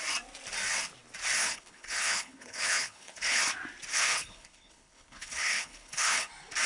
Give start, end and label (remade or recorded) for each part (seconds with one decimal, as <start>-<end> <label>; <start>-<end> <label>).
0.0-1.4 recorded; 1.4-3.4 remade; 3.4-3.9 recorded; 3.9-6.3 remade; 6.3-6.7 recorded